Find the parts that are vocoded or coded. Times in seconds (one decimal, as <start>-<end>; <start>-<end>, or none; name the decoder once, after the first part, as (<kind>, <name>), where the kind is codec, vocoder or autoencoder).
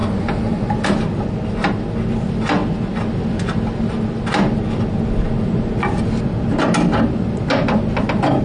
none